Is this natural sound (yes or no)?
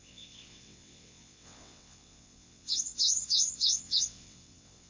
no